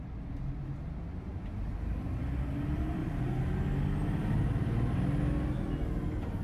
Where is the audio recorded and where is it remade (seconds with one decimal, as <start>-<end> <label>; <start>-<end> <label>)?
0.0-1.3 recorded; 1.3-2.1 remade; 2.1-6.4 recorded